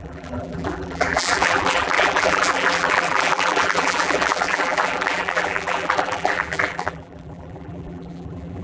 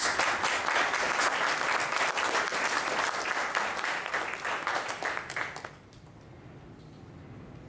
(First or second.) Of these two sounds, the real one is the second